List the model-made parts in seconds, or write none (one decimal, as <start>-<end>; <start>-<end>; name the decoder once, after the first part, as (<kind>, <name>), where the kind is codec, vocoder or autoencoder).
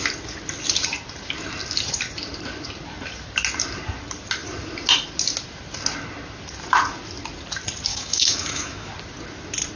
7.9-8.9 (autoencoder, DAC-VAE)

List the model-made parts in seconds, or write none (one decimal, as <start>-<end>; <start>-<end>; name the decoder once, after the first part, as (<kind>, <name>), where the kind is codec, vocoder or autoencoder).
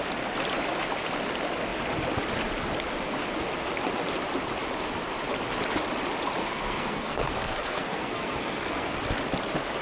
6.4-9.0 (codec, SNAC)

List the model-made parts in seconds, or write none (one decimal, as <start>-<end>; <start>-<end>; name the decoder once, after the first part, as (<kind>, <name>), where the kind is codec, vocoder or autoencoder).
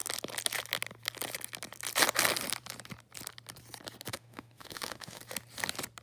4.1-5.2 (autoencoder, DAC-VAE)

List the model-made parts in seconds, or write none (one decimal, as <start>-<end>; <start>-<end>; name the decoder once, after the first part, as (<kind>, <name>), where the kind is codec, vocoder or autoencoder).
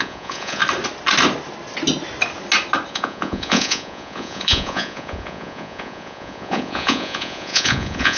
0.0-0.6 (vocoder, Vocos); 2.9-8.2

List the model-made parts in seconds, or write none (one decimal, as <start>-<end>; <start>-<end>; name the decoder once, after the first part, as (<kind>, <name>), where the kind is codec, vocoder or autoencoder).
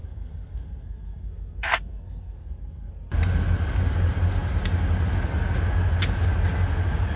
0.0-2.9 (codec, SNAC)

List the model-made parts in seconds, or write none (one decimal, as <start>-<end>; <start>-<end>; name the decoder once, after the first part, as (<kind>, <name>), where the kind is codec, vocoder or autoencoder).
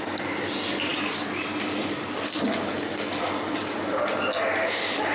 none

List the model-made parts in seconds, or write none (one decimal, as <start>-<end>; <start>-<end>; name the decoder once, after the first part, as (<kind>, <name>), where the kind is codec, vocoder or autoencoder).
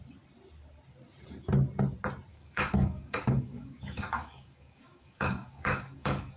2.3-6.4 (codec, DAC)